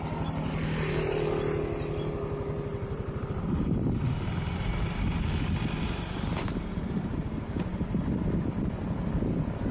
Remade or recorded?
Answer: recorded